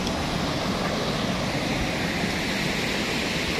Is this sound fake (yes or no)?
no